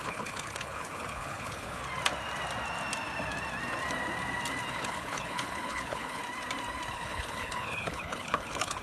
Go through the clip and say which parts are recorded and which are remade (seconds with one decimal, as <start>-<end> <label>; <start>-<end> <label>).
0.0-1.8 remade; 1.8-4.7 recorded; 4.7-6.2 remade; 6.2-6.9 recorded; 6.9-8.8 remade